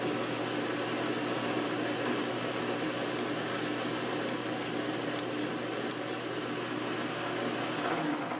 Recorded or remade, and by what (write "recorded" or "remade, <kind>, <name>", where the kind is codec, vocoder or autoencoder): recorded